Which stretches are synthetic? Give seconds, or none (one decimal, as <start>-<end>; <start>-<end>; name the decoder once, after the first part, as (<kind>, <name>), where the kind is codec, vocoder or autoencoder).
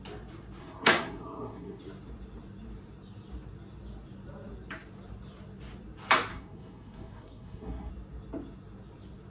0.6-1.8 (codec, SNAC); 6.3-7.9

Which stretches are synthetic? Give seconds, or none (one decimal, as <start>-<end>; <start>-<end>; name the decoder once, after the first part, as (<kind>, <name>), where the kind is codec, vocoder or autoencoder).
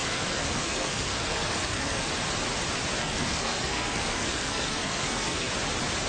0.0-2.1 (codec, SNAC); 3.0-5.5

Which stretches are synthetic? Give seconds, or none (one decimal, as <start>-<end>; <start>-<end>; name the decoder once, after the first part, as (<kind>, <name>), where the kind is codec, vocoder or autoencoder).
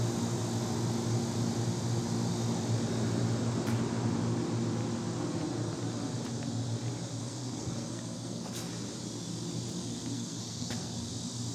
7.2-8.7 (codec, SNAC); 9.8-11.1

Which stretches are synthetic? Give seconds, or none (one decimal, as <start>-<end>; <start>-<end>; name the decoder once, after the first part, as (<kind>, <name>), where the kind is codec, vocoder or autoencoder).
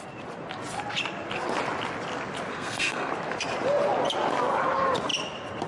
2.5-3.1 (codec, SNAC)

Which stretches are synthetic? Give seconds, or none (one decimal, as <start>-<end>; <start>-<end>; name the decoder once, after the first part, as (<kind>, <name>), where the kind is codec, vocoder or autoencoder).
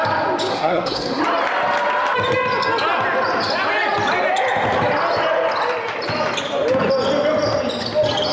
0.5-1.2 (codec, SNAC)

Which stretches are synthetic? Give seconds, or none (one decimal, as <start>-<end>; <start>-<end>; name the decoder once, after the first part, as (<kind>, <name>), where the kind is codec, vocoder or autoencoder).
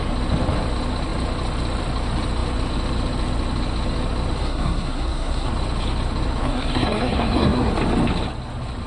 4.4-5.5 (codec, SNAC); 6.4-7.7